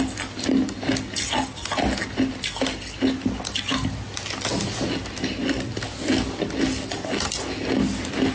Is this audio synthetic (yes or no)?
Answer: no